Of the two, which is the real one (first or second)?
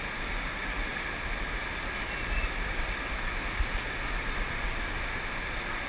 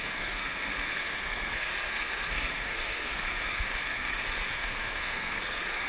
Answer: first